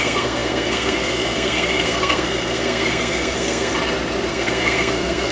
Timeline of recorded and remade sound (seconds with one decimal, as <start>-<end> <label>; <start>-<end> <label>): 0.0-3.7 remade; 3.7-4.3 recorded; 4.3-5.3 remade